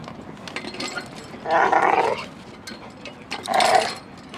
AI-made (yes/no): no